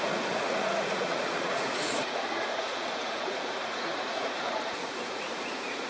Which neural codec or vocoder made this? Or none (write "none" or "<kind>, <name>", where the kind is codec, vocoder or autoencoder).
vocoder, Vocos